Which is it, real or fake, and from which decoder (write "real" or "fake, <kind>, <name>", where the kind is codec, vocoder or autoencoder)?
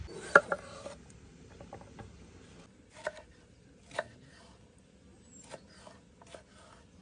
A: real